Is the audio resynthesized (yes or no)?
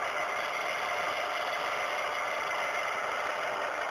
no